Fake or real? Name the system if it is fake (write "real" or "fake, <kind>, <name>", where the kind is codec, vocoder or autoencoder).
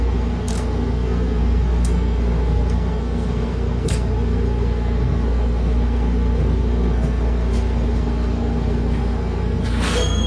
fake, codec, SNAC